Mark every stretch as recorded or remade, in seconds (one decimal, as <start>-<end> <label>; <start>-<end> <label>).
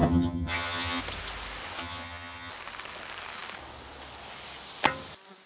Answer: 0.0-1.0 remade; 1.0-1.8 recorded; 1.8-2.5 remade; 2.5-5.5 recorded